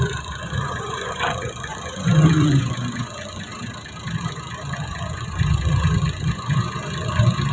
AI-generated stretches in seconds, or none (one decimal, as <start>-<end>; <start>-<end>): 0.0-3.5; 4.2-7.5